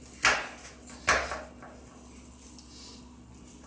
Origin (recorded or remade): recorded